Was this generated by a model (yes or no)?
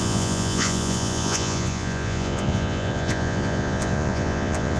yes